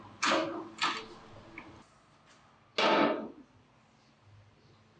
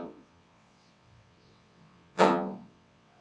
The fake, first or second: second